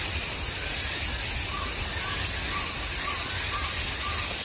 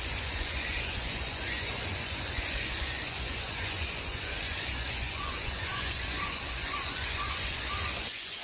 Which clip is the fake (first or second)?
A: second